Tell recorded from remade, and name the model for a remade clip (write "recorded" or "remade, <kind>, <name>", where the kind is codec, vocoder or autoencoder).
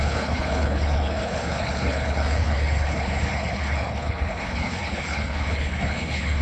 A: remade, codec, HILCodec